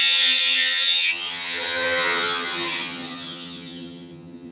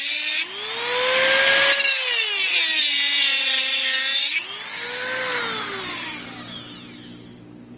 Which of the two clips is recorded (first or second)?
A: second